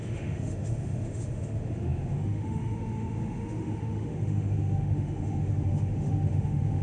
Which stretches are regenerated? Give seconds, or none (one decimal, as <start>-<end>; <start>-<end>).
0.0-6.8